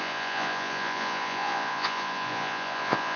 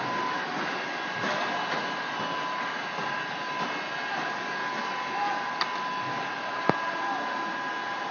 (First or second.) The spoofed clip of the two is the first